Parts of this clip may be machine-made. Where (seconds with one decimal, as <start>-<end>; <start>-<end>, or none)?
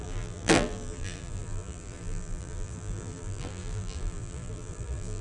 0.0-5.2